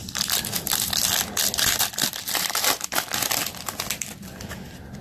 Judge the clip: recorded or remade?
recorded